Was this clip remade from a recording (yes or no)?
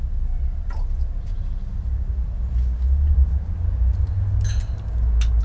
no